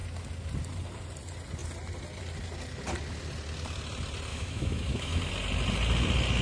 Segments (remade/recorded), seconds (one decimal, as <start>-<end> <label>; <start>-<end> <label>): 0.0-4.3 recorded; 4.3-5.3 remade; 5.3-6.4 recorded